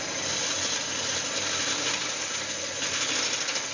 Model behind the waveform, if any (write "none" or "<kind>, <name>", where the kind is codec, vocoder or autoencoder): none